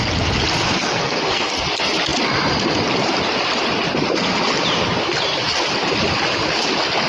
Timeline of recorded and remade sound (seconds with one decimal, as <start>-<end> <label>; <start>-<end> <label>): 0.0-0.8 recorded; 0.8-1.5 remade; 1.5-7.1 recorded